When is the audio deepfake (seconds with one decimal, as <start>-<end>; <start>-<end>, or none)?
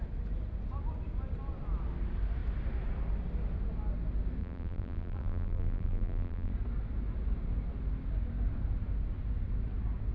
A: 4.4-6.5